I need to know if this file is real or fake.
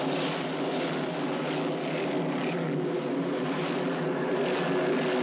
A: real